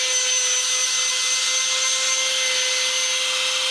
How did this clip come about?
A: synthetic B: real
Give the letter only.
B